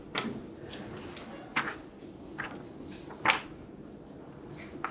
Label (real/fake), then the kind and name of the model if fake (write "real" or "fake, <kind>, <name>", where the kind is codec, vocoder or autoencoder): real